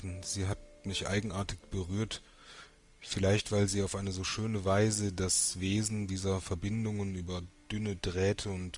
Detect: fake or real real